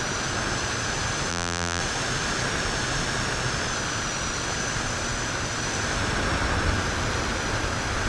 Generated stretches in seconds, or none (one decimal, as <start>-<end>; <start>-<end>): 1.3-1.8